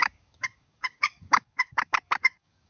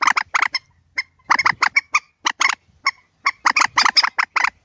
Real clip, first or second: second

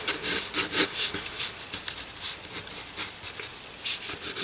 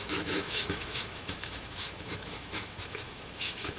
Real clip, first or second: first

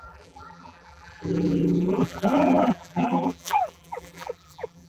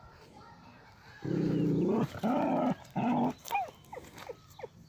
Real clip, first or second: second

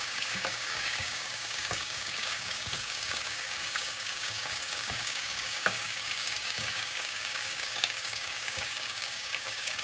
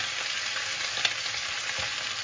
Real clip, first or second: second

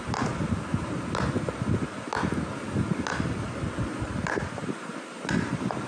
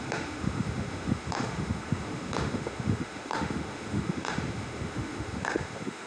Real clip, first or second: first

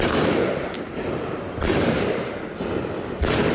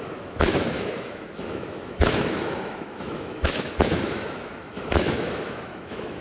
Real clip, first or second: first